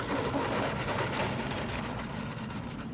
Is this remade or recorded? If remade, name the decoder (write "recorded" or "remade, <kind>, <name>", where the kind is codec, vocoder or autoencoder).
recorded